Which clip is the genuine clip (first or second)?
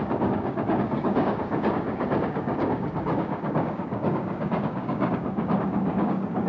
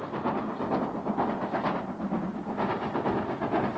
second